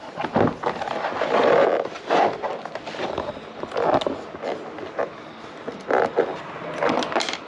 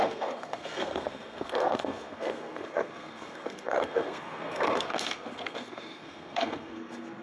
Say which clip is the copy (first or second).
second